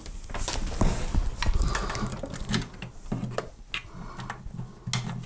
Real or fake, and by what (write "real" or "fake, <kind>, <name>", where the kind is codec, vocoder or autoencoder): real